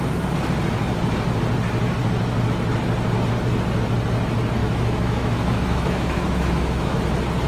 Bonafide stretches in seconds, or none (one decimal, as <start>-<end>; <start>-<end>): 0.0-4.6; 7.0-7.5